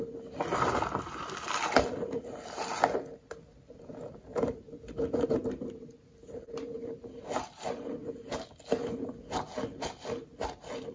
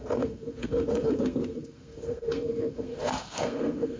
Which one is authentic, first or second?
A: first